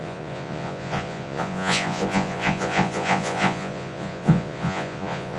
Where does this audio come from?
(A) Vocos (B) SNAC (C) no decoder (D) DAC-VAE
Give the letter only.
A